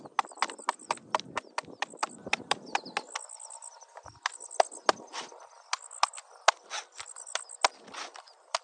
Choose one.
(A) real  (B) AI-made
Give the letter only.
A